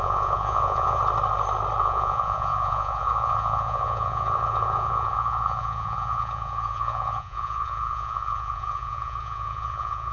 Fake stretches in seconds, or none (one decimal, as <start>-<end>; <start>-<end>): 0.0-1.0; 1.8-10.1